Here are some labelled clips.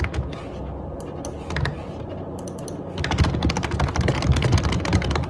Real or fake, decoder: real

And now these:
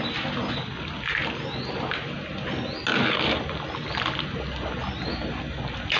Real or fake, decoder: real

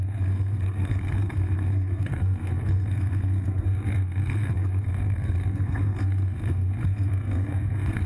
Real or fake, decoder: fake, codec, SNAC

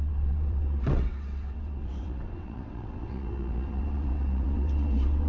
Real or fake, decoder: fake, vocoder, WaveNeXt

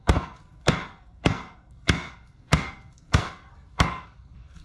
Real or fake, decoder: fake, codec, SNAC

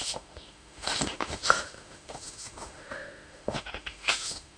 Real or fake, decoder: fake, autoencoder, DAC-VAE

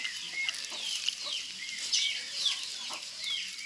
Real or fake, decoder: real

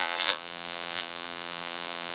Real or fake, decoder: fake, vocoder, BigVGAN v2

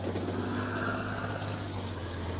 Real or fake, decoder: real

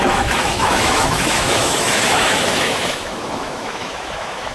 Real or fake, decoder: fake, autoencoder, DAC-VAE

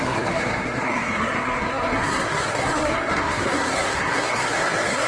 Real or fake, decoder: fake, codec, SNAC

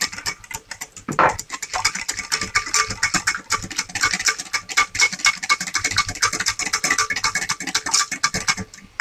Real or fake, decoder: real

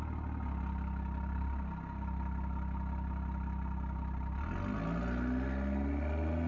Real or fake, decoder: real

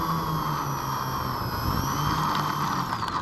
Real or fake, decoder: real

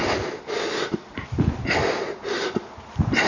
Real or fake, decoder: real